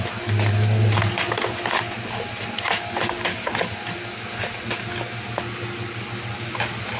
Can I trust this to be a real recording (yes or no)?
yes